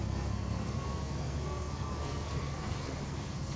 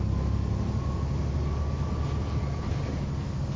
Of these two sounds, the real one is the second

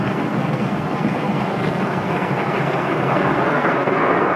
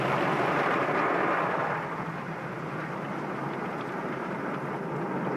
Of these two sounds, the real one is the second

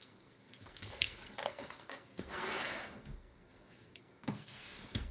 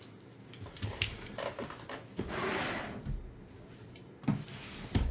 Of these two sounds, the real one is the second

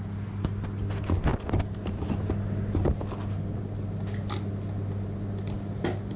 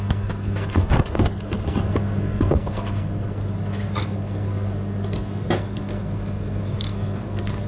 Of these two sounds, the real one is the first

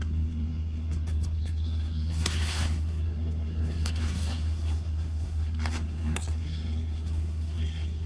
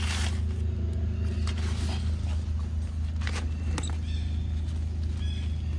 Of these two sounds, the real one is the second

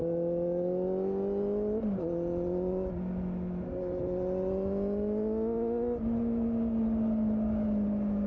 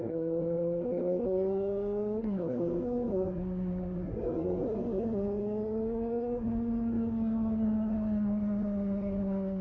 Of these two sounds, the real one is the first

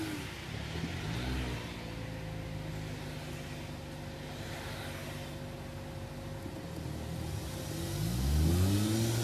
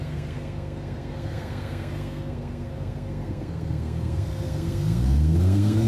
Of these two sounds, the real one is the first